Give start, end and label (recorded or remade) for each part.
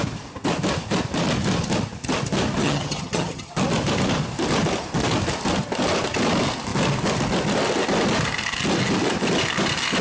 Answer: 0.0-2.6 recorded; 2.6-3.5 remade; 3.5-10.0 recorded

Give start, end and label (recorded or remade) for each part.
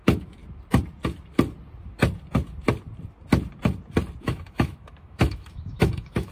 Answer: 0.0-0.4 remade; 0.4-4.2 recorded; 4.2-6.3 remade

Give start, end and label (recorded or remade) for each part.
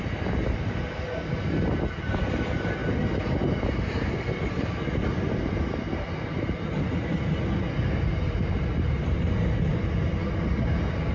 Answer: 0.0-11.1 recorded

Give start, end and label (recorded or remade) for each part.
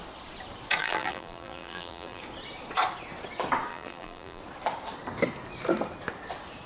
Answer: 0.0-0.8 recorded; 0.8-2.2 remade; 2.2-3.7 recorded; 3.7-4.4 remade; 4.4-6.7 recorded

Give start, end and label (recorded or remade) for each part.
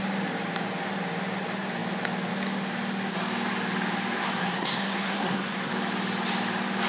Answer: 0.0-4.4 recorded; 4.4-5.7 remade; 5.7-6.9 recorded